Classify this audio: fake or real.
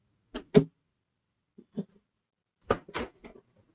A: real